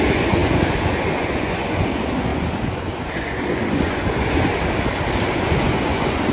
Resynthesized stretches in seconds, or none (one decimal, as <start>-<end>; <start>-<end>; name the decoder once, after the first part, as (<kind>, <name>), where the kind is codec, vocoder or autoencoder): 0.0-4.5 (vocoder, Vocos); 5.3-6.3